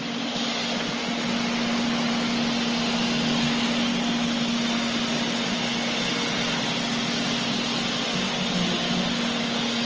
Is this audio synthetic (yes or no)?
no